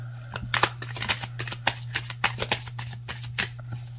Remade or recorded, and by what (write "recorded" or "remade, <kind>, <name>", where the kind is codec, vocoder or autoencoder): recorded